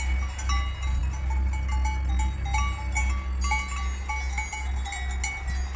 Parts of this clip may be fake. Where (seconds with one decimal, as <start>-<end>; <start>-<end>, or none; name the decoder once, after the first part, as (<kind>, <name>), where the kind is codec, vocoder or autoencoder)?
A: none